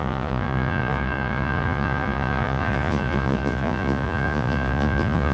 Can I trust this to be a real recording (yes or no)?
no